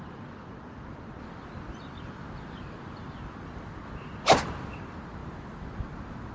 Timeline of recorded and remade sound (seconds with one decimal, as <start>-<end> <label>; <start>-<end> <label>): 0.0-6.3 recorded